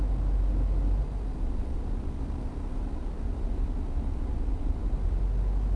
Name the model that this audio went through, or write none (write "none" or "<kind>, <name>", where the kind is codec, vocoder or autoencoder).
none